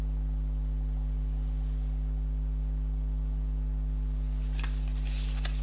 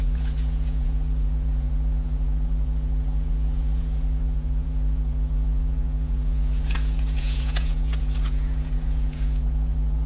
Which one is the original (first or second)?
first